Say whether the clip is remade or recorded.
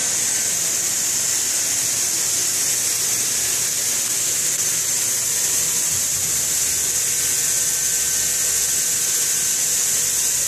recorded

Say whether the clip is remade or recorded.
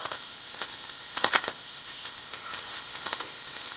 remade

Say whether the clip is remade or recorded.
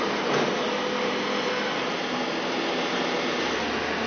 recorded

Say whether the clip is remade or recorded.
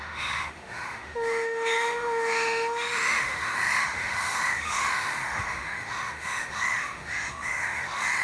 remade